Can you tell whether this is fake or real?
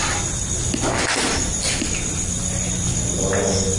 real